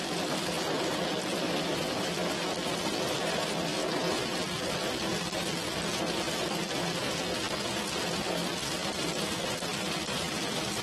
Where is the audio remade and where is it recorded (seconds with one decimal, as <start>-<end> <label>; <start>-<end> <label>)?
0.0-3.1 recorded; 3.1-3.8 remade; 3.8-5.8 recorded; 5.8-7.3 remade; 7.3-8.0 recorded; 8.0-10.8 remade